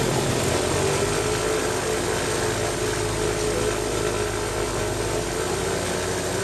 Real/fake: real